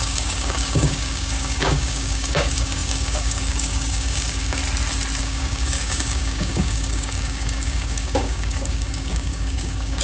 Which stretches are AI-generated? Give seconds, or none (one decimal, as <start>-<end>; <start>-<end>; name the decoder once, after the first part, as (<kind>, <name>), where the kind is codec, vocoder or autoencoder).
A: 0.0-4.6 (codec, DAC); 5.2-10.0